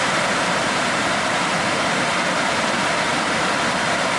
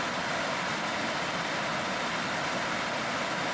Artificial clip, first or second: first